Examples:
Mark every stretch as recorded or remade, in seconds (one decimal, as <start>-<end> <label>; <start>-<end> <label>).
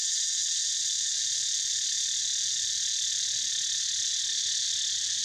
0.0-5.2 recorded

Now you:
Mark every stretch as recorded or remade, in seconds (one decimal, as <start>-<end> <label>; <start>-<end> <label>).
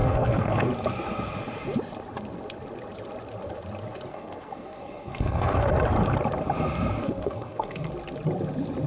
0.0-0.7 remade; 0.7-4.1 recorded; 4.1-5.7 remade; 5.7-7.0 recorded; 7.0-7.9 remade; 7.9-8.9 recorded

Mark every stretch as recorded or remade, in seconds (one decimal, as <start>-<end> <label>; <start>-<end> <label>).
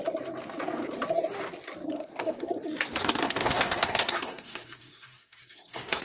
0.0-1.9 recorded; 1.9-2.5 remade; 2.5-3.2 recorded; 3.2-6.0 remade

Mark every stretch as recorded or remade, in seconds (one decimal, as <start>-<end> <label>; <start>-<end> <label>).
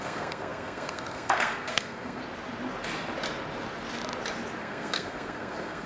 0.0-2.2 remade; 2.2-4.6 recorded; 4.6-5.9 remade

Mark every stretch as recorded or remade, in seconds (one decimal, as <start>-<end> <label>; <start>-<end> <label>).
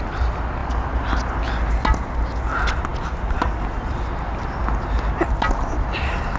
0.0-6.4 recorded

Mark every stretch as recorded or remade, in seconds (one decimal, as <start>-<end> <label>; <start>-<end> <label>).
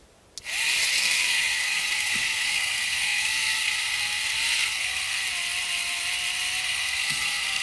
0.0-1.0 recorded; 1.0-5.2 remade; 5.2-6.6 recorded; 6.6-7.6 remade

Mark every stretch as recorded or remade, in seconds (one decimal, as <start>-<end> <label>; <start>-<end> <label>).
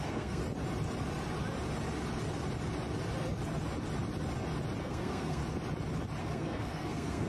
0.0-0.4 remade; 0.4-4.8 recorded; 4.8-5.4 remade; 5.4-6.2 recorded; 6.2-7.3 remade